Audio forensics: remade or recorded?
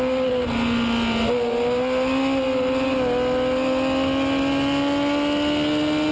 recorded